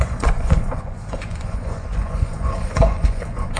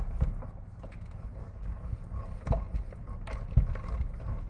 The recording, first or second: second